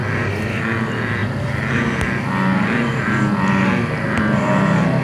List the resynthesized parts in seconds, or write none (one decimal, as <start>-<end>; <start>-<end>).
none